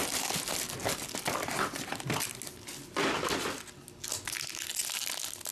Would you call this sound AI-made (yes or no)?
no